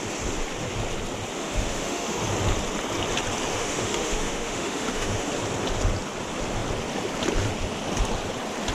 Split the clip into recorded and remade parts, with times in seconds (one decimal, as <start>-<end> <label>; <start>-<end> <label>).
0.0-1.4 recorded; 1.4-2.2 remade; 2.2-3.5 recorded; 3.5-5.3 remade; 5.3-8.7 recorded